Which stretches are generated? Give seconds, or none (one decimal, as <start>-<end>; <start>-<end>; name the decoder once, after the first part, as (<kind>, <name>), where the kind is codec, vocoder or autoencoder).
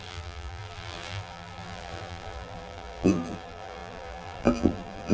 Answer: 0.0-5.1 (vocoder, BigVGAN v2)